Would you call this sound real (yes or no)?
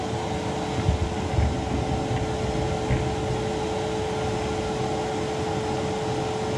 yes